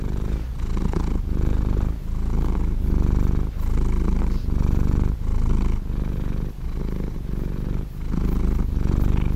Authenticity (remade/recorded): recorded